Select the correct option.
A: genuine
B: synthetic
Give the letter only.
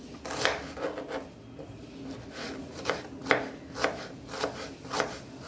A